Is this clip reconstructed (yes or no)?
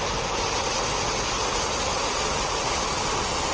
no